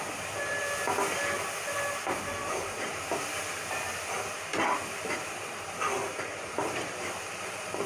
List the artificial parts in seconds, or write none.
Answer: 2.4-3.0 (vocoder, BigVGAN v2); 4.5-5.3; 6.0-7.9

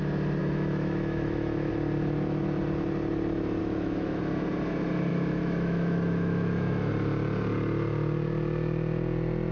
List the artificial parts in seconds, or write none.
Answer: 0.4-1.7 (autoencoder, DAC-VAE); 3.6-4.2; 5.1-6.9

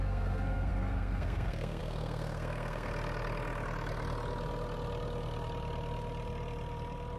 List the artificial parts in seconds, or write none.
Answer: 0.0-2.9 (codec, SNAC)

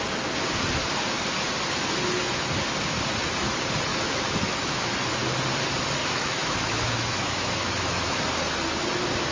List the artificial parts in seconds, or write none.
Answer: 3.9-4.8 (autoencoder, DAC-VAE); 6.0-8.2

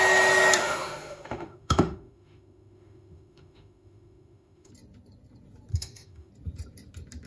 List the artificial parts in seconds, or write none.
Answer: 0.6-4.7 (autoencoder, DAC-VAE); 5.7-6.3